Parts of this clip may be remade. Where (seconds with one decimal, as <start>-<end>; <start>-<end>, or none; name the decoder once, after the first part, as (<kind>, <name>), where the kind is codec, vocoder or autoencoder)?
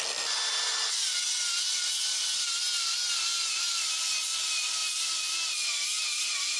none